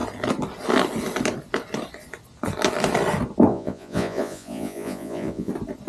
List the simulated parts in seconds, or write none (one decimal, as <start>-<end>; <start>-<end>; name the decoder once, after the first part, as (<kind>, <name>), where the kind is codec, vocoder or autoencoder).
3.5-5.5 (vocoder, Vocos)